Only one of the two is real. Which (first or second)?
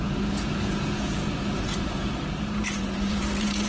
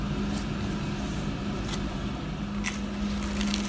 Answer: second